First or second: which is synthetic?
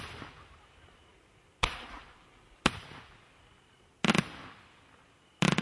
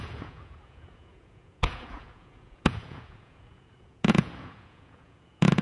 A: second